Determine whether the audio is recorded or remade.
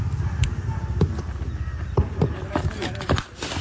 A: recorded